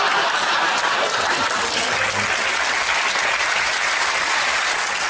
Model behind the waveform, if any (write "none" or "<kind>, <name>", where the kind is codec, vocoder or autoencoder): none